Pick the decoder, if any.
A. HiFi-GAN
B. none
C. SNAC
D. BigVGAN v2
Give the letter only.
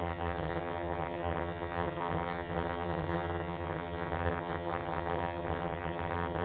A